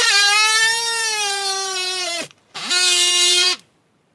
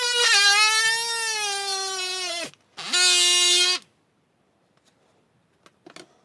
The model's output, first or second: first